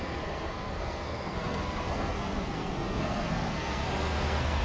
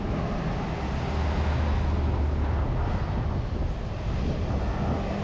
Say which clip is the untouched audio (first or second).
second